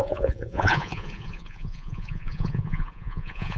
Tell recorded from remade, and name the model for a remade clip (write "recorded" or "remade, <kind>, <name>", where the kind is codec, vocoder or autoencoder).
remade, vocoder, Vocos